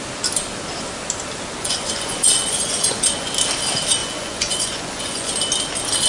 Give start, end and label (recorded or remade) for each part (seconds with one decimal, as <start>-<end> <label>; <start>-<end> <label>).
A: 0.0-1.6 recorded; 1.6-3.3 remade; 3.3-4.0 recorded; 4.0-5.3 remade; 5.3-6.1 recorded